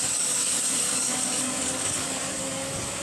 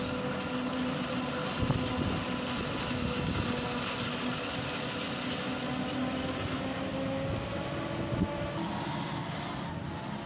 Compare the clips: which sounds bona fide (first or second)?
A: second